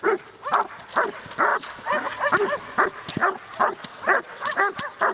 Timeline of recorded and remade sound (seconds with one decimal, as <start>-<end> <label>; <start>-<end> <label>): 0.0-3.9 recorded; 3.9-4.6 remade; 4.6-5.1 recorded